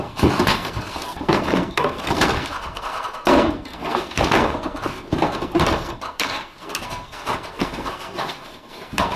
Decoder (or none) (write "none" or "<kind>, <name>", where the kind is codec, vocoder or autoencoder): codec, SNAC